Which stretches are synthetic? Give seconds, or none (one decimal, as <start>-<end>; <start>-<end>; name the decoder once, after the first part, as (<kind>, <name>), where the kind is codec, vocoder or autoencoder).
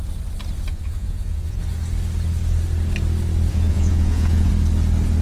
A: 0.7-1.6 (vocoder, Vocos); 3.5-4.5